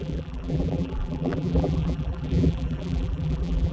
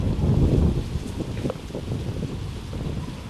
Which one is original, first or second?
second